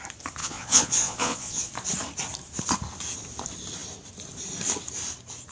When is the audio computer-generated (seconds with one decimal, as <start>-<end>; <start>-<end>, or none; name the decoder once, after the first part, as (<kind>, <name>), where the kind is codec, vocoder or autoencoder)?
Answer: 0.4-1.7 (vocoder, Vocos)

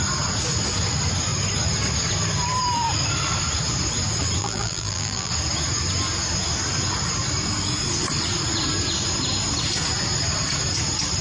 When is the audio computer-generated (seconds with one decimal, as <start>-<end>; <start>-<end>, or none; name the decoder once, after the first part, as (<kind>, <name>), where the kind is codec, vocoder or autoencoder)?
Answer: 4.4-5.3 (vocoder, BigVGAN v2)

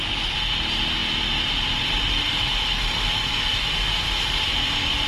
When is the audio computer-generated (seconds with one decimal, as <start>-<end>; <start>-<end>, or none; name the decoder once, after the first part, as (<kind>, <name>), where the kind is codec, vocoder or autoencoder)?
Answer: 3.2-4.0 (autoencoder, DAC-VAE)

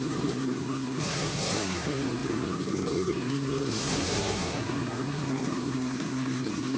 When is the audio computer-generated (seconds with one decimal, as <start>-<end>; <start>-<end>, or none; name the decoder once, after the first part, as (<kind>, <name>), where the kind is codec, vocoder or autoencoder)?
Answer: 0.0-6.8 (codec, SNAC)

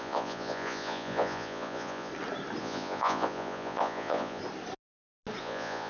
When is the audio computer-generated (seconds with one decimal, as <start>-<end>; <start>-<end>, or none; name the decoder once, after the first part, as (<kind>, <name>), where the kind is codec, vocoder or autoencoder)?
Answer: 0.0-2.1 (vocoder, Vocos); 2.6-4.4; 5.4-5.9